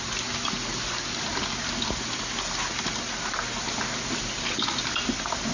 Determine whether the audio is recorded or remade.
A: recorded